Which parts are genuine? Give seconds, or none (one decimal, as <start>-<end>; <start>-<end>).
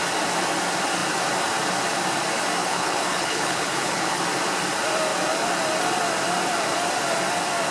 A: 0.0-2.6; 4.2-7.7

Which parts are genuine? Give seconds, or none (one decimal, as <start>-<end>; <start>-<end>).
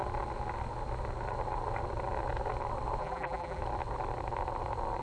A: 0.0-3.0; 3.6-5.0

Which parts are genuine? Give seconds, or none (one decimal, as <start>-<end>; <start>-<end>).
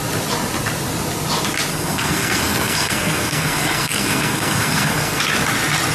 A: 0.0-1.7; 5.2-5.9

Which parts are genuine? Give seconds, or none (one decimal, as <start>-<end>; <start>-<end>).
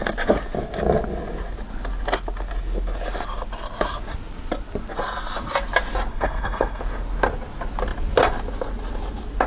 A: 0.0-6.1; 6.8-9.5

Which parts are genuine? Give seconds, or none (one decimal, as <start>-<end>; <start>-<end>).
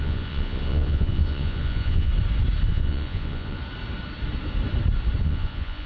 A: 2.1-2.7; 3.6-5.2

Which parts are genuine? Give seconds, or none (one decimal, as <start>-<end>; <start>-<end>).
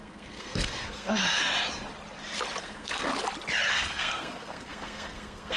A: 1.2-2.6; 3.1-3.7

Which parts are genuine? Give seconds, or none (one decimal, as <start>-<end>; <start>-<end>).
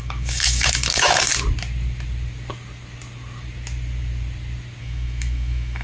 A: 1.3-4.8